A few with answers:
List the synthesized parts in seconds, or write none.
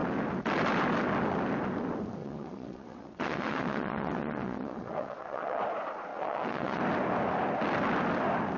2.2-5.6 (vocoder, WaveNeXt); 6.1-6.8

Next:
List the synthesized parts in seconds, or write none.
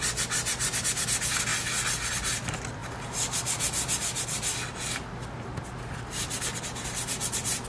none